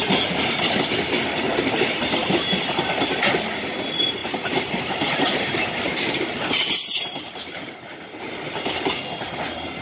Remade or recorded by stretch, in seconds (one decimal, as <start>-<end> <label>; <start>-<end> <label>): 0.0-4.2 recorded; 4.2-6.5 remade; 6.5-9.8 recorded